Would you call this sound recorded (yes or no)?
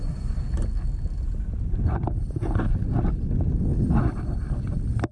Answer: yes